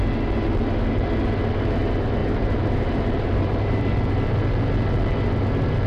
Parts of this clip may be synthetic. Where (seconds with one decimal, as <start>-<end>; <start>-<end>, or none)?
2.2-3.9